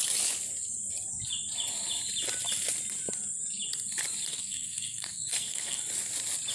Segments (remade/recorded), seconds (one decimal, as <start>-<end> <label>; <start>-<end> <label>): 0.0-4.3 recorded; 4.3-5.8 remade; 5.8-6.5 recorded